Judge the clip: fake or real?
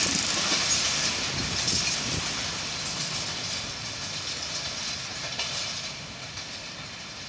real